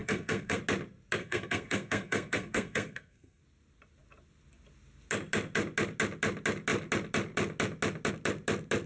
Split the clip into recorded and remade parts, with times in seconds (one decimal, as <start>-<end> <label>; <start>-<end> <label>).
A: 0.0-0.6 remade; 0.6-1.2 recorded; 1.2-3.4 remade; 3.4-8.9 recorded